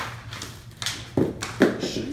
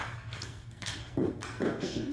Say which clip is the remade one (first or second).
second